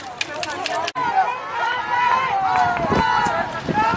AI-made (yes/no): no